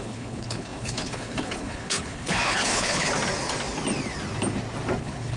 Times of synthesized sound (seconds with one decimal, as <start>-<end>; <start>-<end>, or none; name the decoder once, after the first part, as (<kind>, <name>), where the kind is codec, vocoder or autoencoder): 0.0-3.1 (codec, HILCodec); 5.0-5.4